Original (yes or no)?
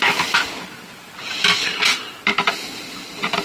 yes